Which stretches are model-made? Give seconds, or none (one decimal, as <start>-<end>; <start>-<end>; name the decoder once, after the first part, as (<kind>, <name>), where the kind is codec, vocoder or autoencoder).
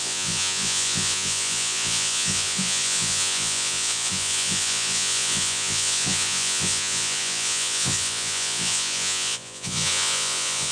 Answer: 0.0-10.7 (vocoder, Vocos)